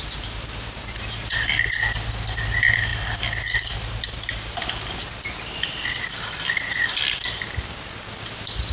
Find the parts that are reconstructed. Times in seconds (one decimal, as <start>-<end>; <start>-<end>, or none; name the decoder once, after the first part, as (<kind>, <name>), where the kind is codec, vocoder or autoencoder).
0.0-8.7 (vocoder, BigVGAN v2)